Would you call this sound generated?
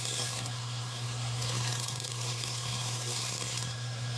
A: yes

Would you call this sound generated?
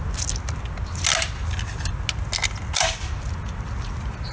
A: no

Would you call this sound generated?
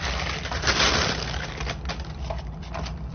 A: no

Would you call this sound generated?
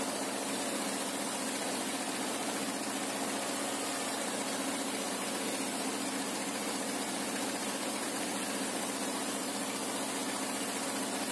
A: no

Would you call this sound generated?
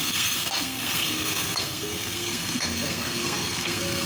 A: yes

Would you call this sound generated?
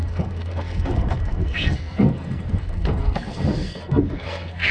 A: yes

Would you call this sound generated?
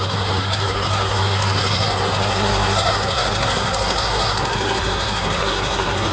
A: yes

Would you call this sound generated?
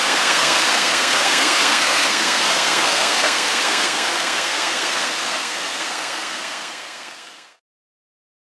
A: yes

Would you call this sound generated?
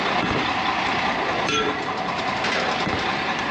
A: no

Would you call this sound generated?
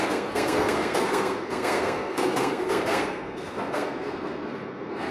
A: yes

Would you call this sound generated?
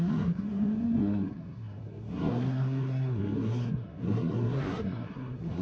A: yes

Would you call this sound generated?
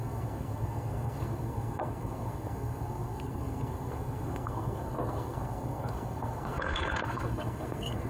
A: yes